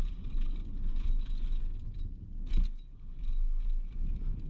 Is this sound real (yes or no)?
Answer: yes